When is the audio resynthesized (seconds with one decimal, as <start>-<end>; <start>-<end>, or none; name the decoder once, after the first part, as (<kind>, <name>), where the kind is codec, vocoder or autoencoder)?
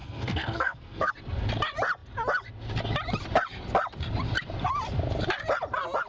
0.0-1.1 (codec, SNAC)